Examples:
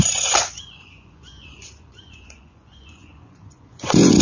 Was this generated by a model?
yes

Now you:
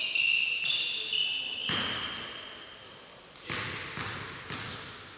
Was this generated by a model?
no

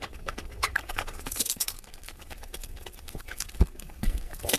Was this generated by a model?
yes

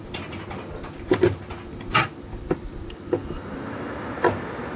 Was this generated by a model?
no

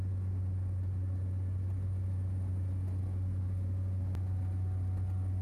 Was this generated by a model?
no